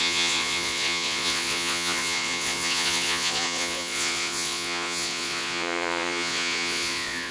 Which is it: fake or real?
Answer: fake